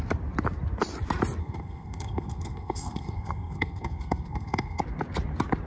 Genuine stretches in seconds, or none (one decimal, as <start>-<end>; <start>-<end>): 0.0-1.4; 4.8-5.7